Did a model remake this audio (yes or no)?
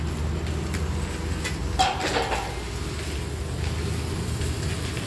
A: no